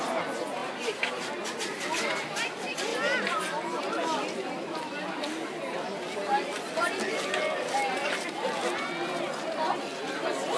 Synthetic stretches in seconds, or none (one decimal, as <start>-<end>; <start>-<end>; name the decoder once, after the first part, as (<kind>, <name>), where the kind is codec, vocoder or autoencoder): none